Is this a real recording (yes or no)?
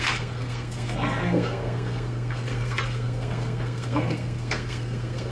no